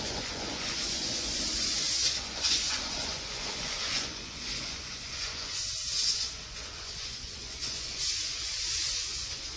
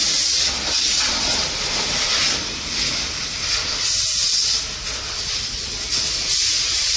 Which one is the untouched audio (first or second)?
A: second